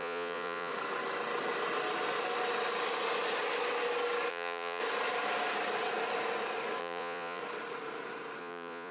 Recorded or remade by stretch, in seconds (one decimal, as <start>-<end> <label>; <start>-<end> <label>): 0.0-0.7 remade; 0.7-4.3 recorded; 4.3-4.8 remade; 4.8-6.8 recorded; 6.8-7.4 remade; 7.4-8.4 recorded; 8.4-8.9 remade